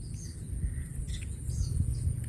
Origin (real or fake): real